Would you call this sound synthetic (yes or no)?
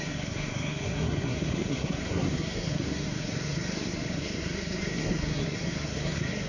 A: yes